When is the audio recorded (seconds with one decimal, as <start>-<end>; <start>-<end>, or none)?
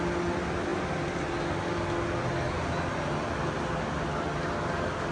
0.0-5.1